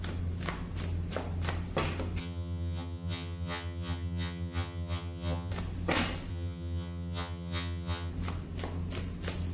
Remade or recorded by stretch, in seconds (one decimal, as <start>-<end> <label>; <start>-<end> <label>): 0.0-2.2 recorded; 2.2-5.5 remade; 5.5-6.3 recorded; 6.3-8.1 remade; 8.1-9.5 recorded